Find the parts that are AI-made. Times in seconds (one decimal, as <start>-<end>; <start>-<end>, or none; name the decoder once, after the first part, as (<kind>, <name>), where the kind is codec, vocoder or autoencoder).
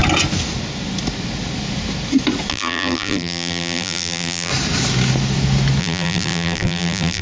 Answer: 2.5-4.5 (vocoder, BigVGAN v2); 5.8-7.2